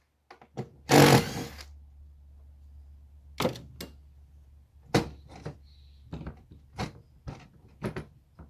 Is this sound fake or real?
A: real